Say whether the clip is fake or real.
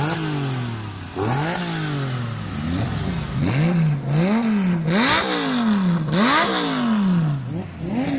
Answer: real